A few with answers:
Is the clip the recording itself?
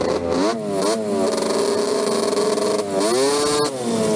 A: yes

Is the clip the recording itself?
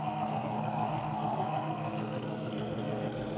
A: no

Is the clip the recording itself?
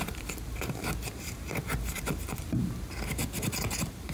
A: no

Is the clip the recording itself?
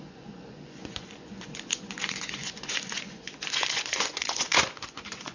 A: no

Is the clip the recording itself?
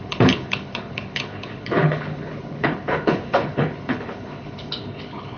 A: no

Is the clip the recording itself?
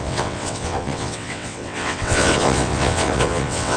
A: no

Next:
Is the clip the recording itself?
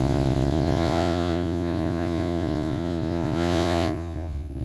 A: no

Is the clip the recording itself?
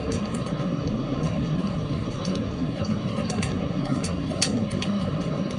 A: no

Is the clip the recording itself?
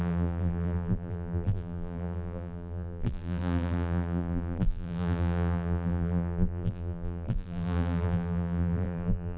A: no